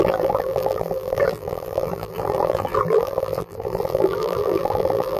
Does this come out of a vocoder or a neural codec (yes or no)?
yes